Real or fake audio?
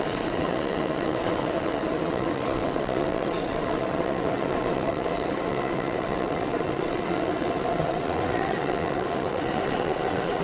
fake